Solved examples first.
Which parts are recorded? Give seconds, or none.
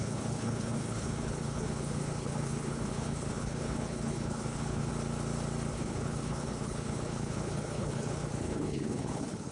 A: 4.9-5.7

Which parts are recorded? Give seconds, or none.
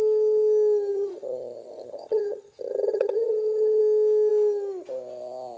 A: 0.0-0.9; 3.8-5.6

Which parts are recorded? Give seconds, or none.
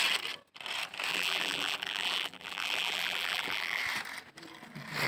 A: 0.0-1.1; 3.8-5.1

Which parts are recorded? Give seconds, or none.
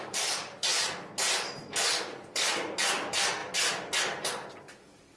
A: 0.7-2.0; 3.4-4.0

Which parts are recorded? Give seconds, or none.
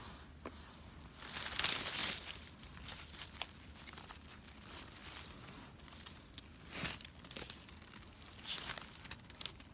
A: 0.0-2.0; 2.8-9.7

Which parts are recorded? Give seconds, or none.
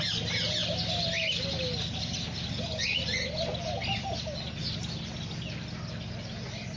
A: 0.0-0.6; 4.7-6.8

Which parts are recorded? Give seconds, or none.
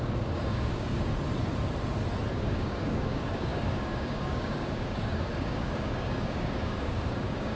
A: 1.1-2.3